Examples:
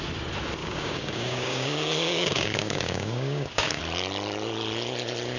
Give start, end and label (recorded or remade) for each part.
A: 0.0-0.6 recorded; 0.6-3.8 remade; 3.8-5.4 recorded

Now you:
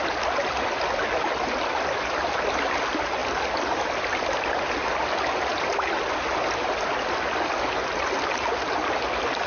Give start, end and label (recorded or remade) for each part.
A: 0.0-9.5 recorded

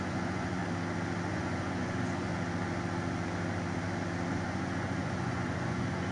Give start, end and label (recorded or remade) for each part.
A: 0.0-0.6 remade; 0.6-1.3 recorded; 1.3-2.3 remade; 2.3-4.3 recorded; 4.3-6.1 remade

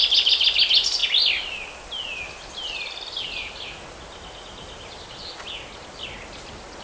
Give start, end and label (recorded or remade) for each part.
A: 0.0-6.8 recorded

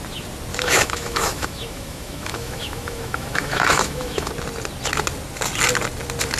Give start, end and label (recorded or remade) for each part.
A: 0.0-0.5 recorded; 0.5-4.3 remade; 4.3-6.4 recorded

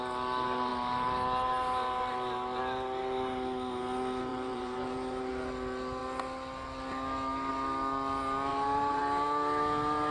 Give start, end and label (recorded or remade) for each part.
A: 0.0-4.3 recorded; 4.3-5.3 remade; 5.3-8.5 recorded; 8.5-9.0 remade; 9.0-10.1 recorded